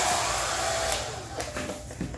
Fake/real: real